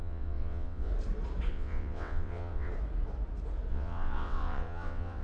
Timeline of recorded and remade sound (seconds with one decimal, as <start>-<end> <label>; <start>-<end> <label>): 0.0-0.9 remade; 0.9-1.5 recorded; 1.5-2.7 remade; 2.7-3.7 recorded; 3.7-5.2 remade